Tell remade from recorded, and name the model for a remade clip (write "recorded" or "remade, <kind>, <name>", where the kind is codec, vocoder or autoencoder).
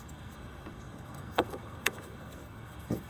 remade, codec, SNAC